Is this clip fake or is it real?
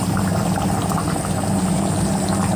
real